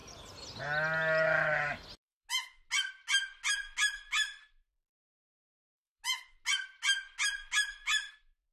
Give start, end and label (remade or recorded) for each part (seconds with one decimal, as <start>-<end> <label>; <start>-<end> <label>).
0.0-8.5 recorded